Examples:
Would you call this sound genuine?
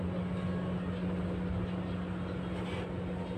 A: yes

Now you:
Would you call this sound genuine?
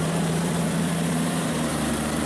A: no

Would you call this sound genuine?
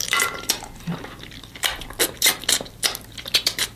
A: no